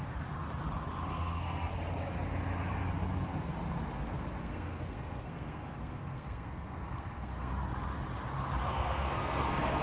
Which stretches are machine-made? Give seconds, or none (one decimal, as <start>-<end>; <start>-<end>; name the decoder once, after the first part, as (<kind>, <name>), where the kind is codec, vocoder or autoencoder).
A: 1.1-1.7 (codec, SNAC); 4.4-7.5; 8.6-9.8